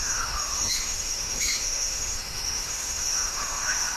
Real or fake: fake